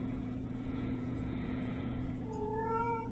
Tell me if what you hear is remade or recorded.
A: remade